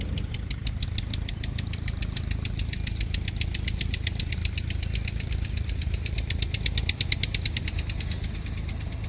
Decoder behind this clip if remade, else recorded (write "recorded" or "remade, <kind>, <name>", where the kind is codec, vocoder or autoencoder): recorded